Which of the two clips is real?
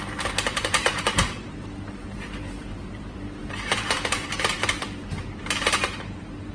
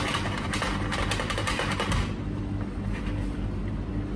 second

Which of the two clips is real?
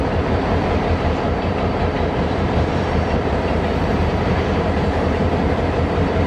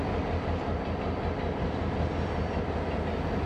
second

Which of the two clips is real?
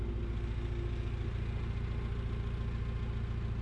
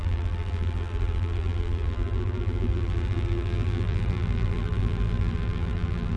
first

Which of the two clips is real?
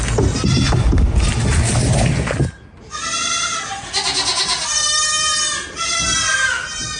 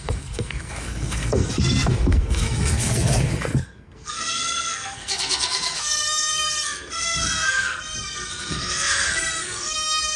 first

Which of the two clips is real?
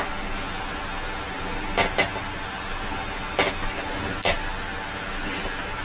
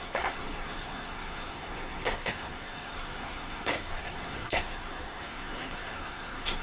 first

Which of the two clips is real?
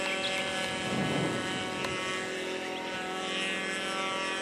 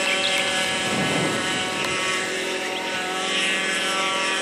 first